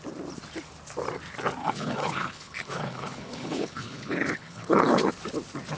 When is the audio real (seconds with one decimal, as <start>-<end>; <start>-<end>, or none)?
0.0-1.6; 5.1-5.8